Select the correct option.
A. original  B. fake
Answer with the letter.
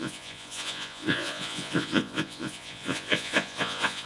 B